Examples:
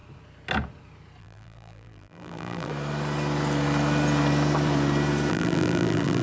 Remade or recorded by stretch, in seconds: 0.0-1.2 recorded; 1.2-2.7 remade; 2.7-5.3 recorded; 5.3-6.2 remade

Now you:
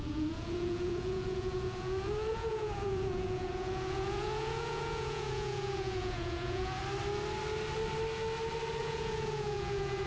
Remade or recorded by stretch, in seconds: 0.0-6.8 remade; 6.8-8.8 recorded; 8.8-10.1 remade

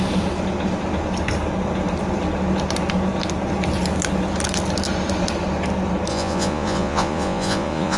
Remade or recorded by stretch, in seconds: 0.0-6.1 recorded; 6.1-8.0 remade

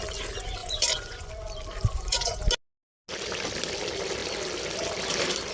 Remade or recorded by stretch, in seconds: 0.0-0.6 recorded; 0.6-1.3 remade; 1.3-1.9 recorded; 1.9-2.4 remade; 2.4-5.5 recorded

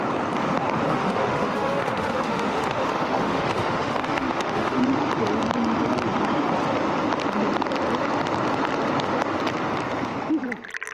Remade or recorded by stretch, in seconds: 0.0-0.9 recorded; 0.9-4.8 remade; 4.8-10.9 recorded

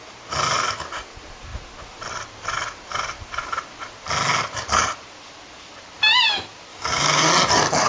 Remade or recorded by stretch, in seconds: 0.0-6.7 recorded; 6.7-7.3 remade; 7.3-7.9 recorded